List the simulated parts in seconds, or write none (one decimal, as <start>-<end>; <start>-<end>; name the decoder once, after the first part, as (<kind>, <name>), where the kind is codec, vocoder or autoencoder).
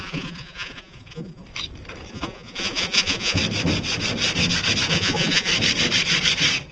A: 0.0-1.4 (vocoder, Vocos); 2.1-3.4; 4.9-5.5